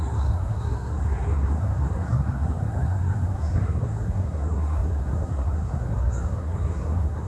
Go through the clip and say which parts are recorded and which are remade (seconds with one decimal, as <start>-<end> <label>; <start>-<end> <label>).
0.0-7.3 remade